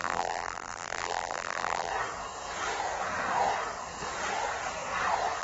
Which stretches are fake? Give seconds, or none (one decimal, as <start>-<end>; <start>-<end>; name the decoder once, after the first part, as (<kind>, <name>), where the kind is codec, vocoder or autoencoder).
0.0-1.9 (vocoder, BigVGAN v2)